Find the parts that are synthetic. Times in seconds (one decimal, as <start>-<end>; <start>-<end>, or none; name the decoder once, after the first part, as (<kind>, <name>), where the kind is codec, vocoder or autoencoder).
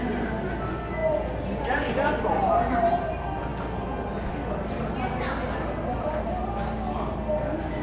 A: none